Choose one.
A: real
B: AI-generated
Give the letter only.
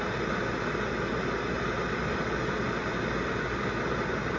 A